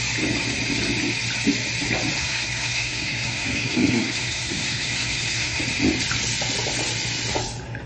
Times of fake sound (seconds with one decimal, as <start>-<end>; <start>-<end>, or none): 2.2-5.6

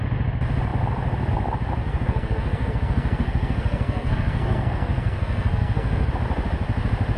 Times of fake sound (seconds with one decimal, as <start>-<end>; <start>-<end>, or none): 1.8-6.1

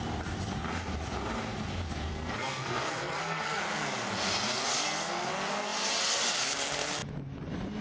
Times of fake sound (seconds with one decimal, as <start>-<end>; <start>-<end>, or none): 2.1-3.6; 4.7-5.3

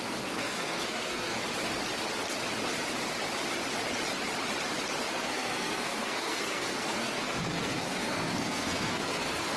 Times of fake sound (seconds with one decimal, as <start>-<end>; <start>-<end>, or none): 0.0-1.4; 5.1-9.6

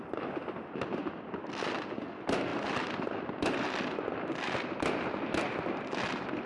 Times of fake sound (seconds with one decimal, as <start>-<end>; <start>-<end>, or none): none